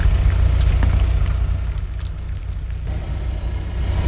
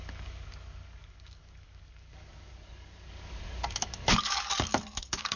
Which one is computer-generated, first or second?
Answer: second